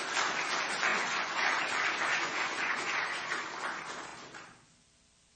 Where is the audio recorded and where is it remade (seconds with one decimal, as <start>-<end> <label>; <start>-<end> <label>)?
0.0-0.9 recorded; 0.9-1.6 remade; 1.6-2.1 recorded; 2.1-3.3 remade; 3.3-5.4 recorded